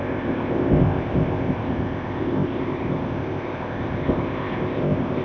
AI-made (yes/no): yes